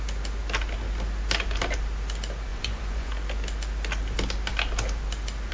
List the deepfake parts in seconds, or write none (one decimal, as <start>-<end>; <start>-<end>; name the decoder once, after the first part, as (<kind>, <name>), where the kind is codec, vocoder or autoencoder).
2.5-3.1 (vocoder, Vocos)